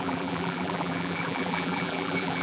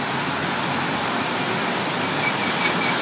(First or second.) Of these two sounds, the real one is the second